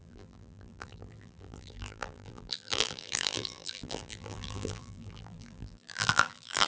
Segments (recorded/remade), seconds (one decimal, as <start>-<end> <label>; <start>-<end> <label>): 0.0-6.7 remade